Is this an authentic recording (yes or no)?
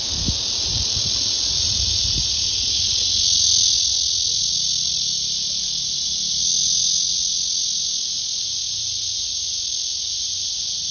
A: yes